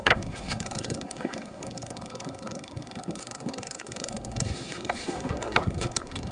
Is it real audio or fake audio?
fake